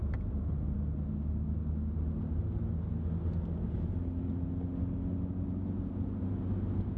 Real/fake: real